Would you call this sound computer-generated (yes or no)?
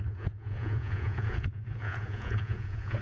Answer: yes